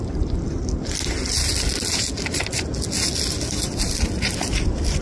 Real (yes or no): yes